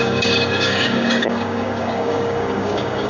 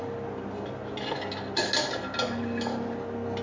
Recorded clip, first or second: second